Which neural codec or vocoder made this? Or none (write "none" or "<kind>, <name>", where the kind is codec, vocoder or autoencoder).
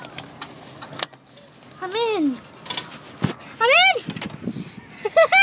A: none